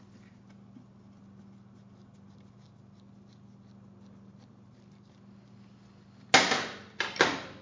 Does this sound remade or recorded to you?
recorded